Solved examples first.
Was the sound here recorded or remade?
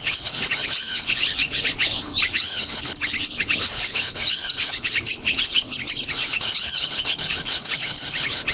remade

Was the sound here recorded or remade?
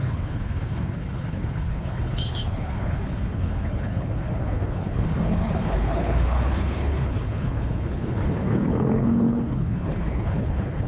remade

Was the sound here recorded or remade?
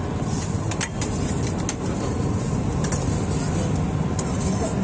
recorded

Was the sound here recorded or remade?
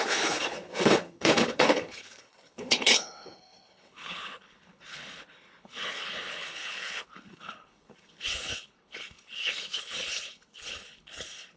remade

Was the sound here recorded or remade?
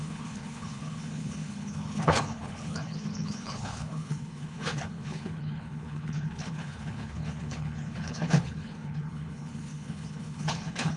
remade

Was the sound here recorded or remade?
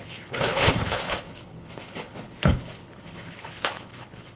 remade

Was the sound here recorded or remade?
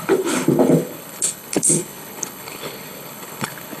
remade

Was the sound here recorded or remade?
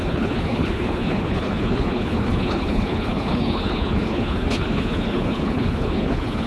remade